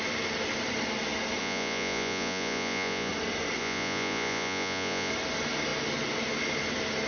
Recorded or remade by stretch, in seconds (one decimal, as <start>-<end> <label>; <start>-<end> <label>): 0.0-1.4 recorded; 1.4-3.1 remade; 3.1-3.6 recorded; 3.6-5.1 remade; 5.1-7.1 recorded